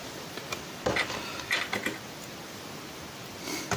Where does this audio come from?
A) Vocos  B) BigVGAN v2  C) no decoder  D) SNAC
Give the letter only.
C